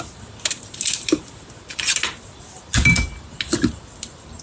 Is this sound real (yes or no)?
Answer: yes